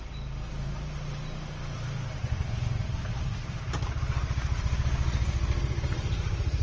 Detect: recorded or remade remade